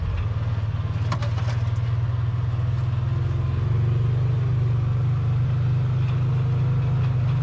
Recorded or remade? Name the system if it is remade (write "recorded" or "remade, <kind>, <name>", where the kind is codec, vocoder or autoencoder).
recorded